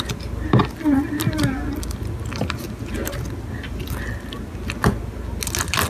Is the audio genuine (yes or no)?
yes